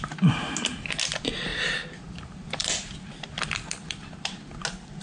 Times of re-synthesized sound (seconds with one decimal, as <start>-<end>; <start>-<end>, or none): 1.5-4.5